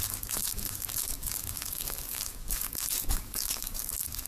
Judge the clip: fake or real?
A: fake